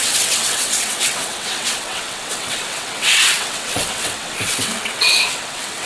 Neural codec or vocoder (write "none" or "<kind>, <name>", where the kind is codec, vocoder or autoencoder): vocoder, WaveNeXt